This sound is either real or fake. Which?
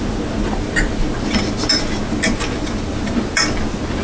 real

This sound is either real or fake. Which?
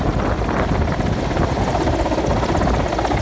real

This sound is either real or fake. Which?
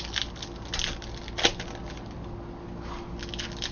real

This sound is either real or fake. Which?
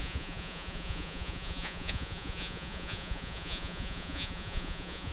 fake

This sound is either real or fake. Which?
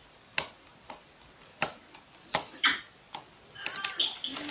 real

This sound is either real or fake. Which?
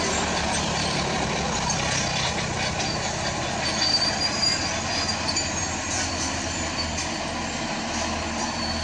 fake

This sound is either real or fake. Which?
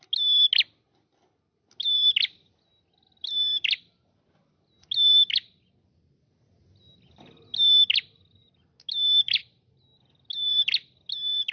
real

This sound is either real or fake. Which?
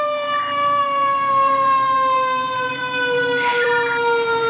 fake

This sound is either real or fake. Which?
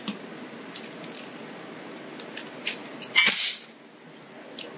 real